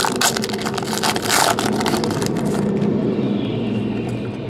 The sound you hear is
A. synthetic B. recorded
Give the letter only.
B